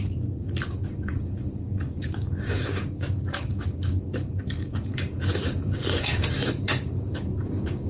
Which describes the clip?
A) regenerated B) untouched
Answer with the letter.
A